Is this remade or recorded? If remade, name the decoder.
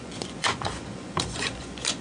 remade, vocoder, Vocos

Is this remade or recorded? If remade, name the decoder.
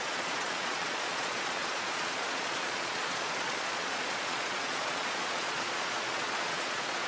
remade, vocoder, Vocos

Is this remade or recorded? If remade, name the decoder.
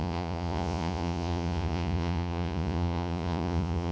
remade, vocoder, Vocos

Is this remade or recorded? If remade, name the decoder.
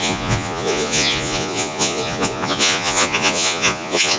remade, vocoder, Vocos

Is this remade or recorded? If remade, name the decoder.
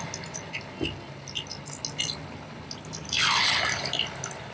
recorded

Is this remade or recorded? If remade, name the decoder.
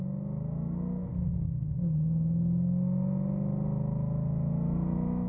recorded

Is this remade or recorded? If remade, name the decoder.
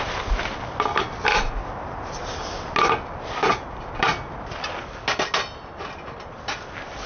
recorded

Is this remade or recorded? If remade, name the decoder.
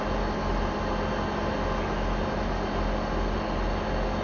recorded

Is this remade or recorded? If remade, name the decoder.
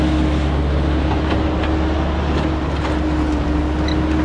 recorded